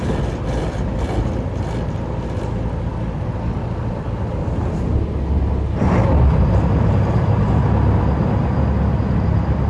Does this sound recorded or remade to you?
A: recorded